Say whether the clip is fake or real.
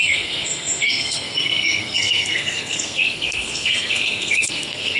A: fake